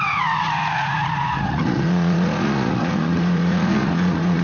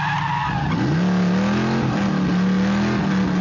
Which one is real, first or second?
second